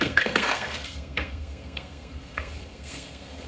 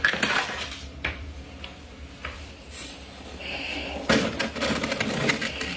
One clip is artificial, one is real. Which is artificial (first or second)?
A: first